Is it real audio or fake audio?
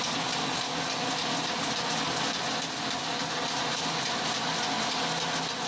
real